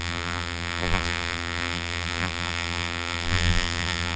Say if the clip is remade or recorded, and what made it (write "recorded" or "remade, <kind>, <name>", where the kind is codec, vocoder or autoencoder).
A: remade, vocoder, BigVGAN v2